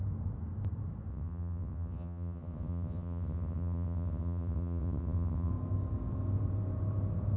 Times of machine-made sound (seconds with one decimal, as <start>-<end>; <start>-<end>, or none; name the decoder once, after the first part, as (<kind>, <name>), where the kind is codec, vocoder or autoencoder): 1.1-5.5 (vocoder, WaveNeXt)